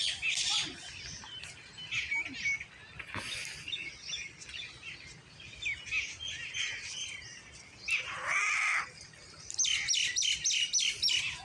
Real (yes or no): yes